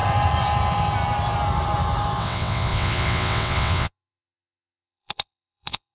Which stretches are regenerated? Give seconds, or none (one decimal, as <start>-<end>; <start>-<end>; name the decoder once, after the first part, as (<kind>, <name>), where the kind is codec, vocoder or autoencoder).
2.2-5.9 (vocoder, WaveNeXt)

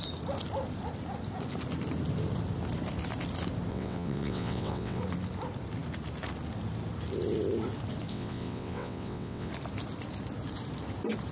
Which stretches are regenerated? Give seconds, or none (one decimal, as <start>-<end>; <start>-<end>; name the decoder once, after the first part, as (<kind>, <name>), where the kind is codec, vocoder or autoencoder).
3.7-5.0 (vocoder, WaveNeXt); 8.1-9.5

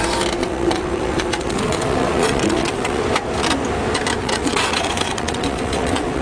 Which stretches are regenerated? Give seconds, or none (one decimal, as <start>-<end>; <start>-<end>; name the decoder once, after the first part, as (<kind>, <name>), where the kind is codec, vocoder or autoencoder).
0.4-3.0 (vocoder, WaveNeXt); 4.2-6.2

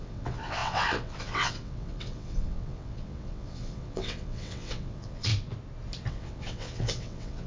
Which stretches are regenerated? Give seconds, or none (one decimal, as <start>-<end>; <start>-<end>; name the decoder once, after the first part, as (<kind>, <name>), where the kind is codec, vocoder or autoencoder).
0.0-5.3 (vocoder, WaveNeXt); 6.1-7.5

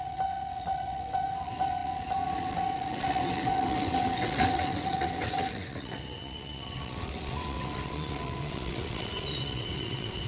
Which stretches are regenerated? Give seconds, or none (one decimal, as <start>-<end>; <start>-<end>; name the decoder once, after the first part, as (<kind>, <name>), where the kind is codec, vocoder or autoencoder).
0.0-10.3 (vocoder, WaveNeXt)

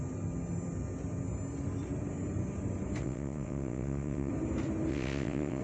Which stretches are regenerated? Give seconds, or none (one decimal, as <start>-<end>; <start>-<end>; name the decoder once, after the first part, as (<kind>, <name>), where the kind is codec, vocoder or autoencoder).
3.0-4.3 (vocoder, WaveNeXt); 4.9-5.6